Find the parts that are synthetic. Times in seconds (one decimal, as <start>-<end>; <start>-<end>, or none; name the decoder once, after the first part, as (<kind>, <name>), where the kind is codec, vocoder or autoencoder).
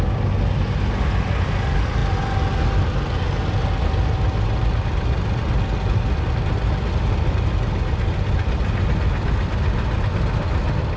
none